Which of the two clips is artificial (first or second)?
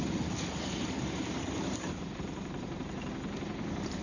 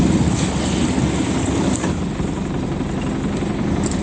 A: first